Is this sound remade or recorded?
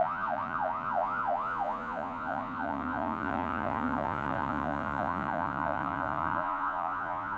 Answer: remade